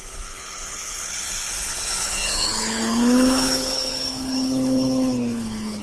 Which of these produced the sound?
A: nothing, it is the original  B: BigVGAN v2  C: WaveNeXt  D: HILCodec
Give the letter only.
D